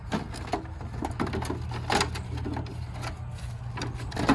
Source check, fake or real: real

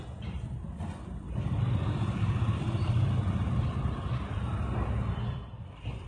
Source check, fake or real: fake